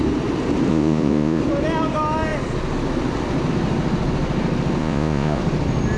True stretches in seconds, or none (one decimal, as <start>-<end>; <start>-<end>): 0.0-0.7; 1.4-4.8; 5.4-6.0